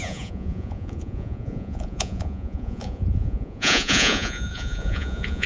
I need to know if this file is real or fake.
fake